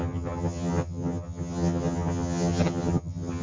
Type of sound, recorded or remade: remade